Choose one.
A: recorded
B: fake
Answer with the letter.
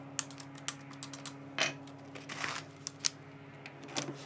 A